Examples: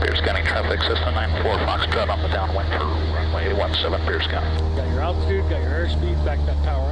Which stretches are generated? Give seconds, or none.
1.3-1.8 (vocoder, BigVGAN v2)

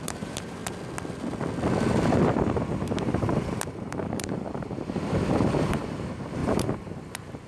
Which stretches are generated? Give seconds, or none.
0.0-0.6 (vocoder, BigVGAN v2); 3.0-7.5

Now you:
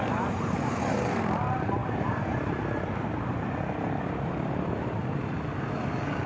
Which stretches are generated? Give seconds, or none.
0.0-1.8 (vocoder, BigVGAN v2); 3.3-5.0